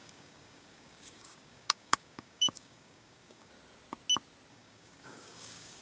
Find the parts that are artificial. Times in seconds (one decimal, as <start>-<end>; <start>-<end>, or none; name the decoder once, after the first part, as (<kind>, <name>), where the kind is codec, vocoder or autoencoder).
0.0-3.5 (codec, DAC); 4.5-5.8